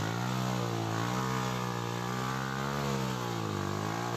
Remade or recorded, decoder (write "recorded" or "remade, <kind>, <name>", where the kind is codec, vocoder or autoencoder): recorded